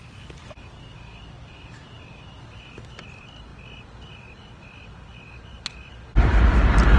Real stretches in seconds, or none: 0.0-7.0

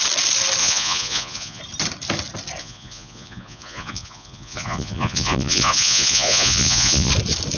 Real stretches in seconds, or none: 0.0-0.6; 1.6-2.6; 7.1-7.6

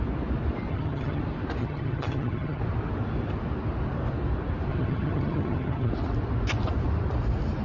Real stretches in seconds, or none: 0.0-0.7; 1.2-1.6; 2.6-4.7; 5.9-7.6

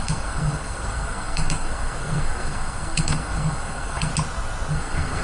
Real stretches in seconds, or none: 4.1-4.7

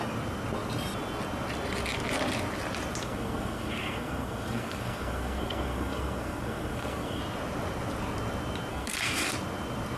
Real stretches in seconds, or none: 0.0-3.0; 7.2-8.7; 9.3-10.0

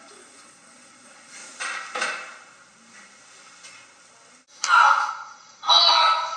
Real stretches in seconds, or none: 1.4-5.1

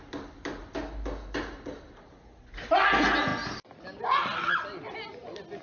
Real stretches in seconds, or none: 0.0-5.6